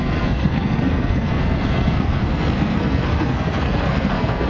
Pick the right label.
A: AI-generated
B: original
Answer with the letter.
A